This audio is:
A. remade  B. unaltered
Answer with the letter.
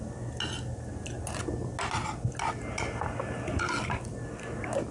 B